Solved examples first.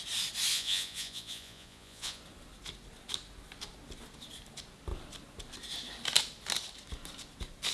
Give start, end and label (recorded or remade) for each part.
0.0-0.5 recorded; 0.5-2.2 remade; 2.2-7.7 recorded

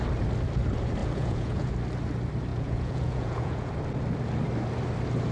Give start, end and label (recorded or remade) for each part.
0.0-1.0 recorded; 1.0-1.7 remade; 1.7-2.5 recorded; 2.5-3.7 remade; 3.7-5.3 recorded

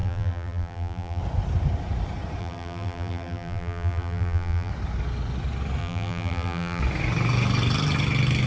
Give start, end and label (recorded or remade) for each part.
0.0-1.2 remade; 1.2-2.4 recorded; 2.4-4.7 remade; 4.7-5.8 recorded; 5.8-6.8 remade; 6.8-8.5 recorded

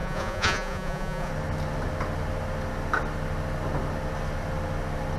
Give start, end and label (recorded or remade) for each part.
0.0-1.3 remade; 1.3-5.2 recorded

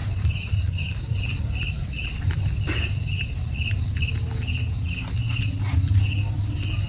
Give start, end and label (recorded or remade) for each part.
0.0-4.1 remade; 4.1-6.9 recorded

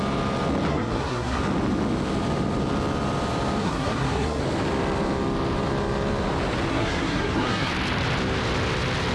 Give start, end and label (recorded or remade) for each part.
0.0-0.7 recorded; 0.7-1.4 remade; 1.4-3.6 recorded; 3.6-4.4 remade; 4.4-6.7 recorded; 6.7-7.7 remade; 7.7-9.1 recorded

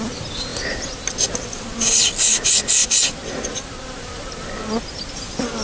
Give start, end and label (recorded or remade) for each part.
0.0-5.6 recorded

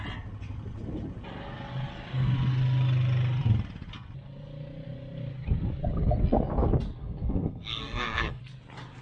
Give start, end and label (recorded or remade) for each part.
0.0-7.0 recorded; 7.0-8.4 remade; 8.4-9.0 recorded